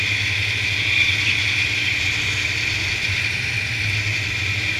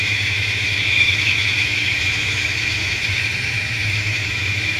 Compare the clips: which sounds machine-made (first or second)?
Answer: second